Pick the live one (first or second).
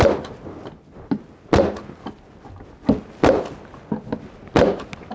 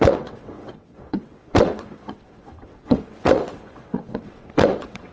first